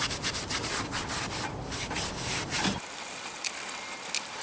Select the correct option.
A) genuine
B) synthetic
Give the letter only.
A